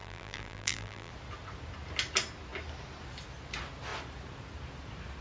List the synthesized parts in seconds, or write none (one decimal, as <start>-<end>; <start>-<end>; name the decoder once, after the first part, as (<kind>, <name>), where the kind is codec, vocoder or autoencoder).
0.0-1.1 (vocoder, BigVGAN v2)